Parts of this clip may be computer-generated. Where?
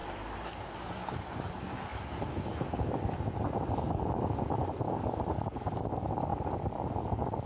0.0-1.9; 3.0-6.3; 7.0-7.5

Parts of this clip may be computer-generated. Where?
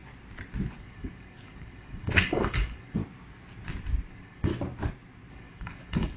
0.7-3.0; 4.1-4.5; 5.3-6.2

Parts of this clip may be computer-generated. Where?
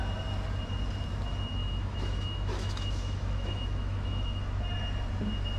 1.6-4.6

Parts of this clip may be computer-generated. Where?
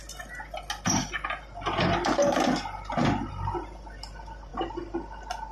none